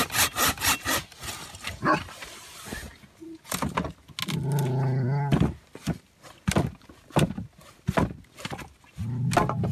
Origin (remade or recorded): recorded